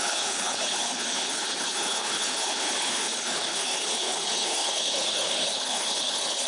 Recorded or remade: remade